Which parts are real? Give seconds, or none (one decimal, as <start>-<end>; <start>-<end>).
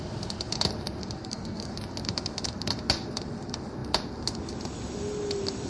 0.0-1.2; 1.7-5.7